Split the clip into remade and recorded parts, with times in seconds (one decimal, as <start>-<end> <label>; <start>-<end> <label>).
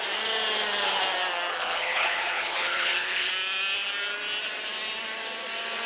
0.0-1.5 recorded; 1.5-3.3 remade; 3.3-5.9 recorded